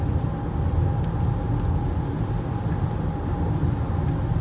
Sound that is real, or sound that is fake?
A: real